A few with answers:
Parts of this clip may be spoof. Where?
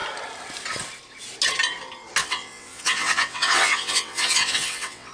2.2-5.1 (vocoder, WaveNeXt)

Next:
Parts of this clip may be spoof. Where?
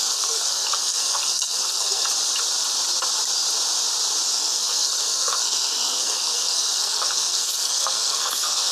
0.0-2.1 (codec, SNAC); 4.3-8.7